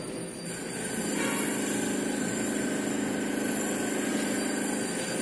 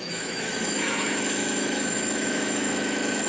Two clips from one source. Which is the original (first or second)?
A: first